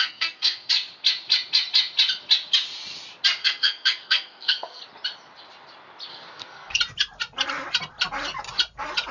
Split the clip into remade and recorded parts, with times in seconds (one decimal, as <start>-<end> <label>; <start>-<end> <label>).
0.0-0.7 remade; 0.7-3.4 recorded; 3.4-4.8 remade; 4.8-6.1 recorded; 6.1-6.8 remade; 6.8-9.1 recorded